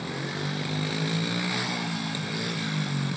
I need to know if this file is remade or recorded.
recorded